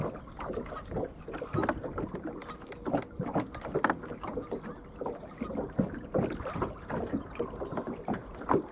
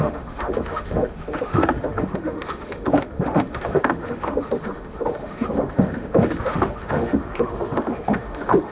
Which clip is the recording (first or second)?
first